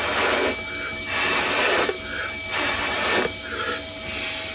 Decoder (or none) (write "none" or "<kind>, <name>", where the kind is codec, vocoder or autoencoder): none